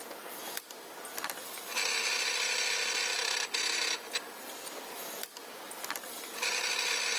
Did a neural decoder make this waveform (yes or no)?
no